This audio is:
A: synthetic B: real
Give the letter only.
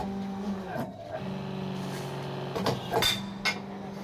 B